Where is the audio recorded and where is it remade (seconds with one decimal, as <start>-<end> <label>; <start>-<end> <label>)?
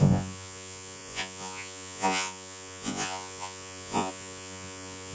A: 0.0-5.1 remade